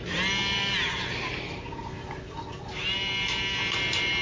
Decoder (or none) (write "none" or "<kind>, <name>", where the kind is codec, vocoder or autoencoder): none